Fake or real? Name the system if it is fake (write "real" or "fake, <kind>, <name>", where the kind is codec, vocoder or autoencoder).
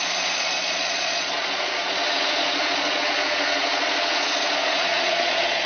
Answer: fake, vocoder, Vocos